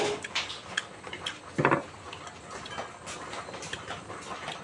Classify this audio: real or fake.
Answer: real